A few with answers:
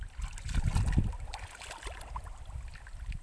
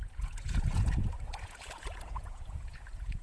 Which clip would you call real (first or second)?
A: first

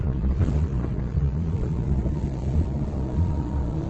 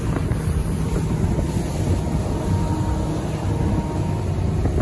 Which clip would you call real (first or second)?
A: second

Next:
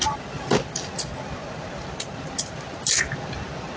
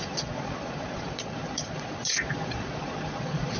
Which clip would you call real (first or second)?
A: first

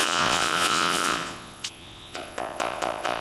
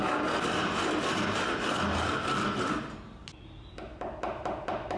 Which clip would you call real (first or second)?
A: second